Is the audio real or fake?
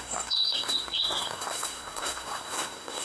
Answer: fake